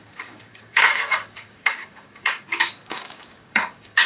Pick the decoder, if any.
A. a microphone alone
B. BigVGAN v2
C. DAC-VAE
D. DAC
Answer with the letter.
D